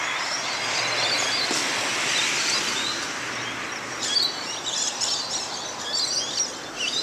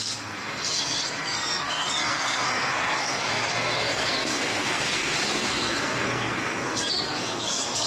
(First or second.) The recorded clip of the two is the first